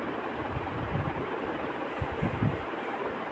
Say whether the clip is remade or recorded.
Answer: remade